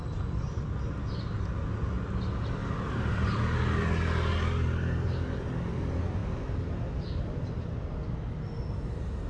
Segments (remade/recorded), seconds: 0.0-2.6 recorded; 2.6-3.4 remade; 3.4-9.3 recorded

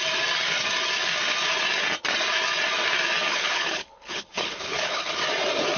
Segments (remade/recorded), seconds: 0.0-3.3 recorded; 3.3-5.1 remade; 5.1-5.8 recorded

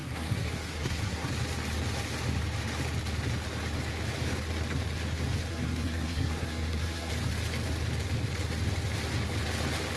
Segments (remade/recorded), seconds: 0.0-1.3 remade; 1.3-5.5 recorded; 5.5-7.1 remade; 7.1-10.0 recorded